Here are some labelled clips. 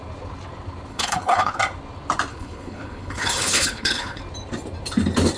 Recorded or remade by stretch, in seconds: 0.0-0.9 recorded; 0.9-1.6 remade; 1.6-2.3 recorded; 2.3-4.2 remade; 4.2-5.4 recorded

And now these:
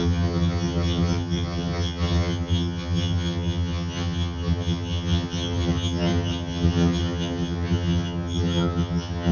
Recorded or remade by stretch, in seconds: 0.0-9.3 remade

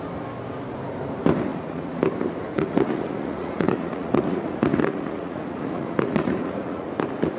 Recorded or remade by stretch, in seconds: 0.0-1.5 recorded; 1.5-2.0 remade; 2.0-2.5 recorded; 2.5-6.9 remade; 6.9-7.4 recorded

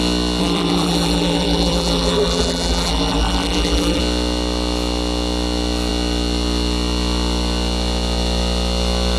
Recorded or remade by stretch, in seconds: 0.0-0.4 recorded; 0.4-4.0 remade; 4.0-9.2 recorded